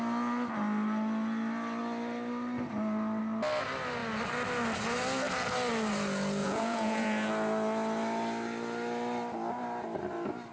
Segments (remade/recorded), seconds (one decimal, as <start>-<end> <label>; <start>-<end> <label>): 0.0-6.4 recorded; 6.4-7.3 remade; 7.3-10.5 recorded

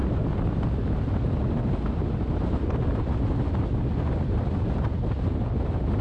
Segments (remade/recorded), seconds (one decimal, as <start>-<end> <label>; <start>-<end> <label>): 0.0-6.0 recorded

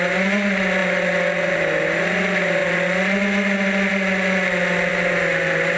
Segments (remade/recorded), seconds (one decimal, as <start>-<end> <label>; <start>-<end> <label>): 0.0-5.8 recorded

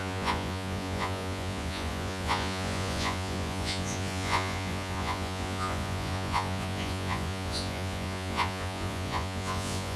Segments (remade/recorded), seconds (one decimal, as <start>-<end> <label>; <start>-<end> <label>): 0.0-10.0 remade